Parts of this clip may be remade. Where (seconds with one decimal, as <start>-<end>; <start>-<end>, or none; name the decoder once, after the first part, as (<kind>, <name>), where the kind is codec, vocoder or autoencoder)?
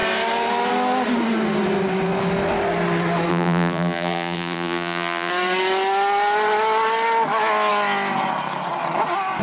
3.3-5.3 (vocoder, BigVGAN v2)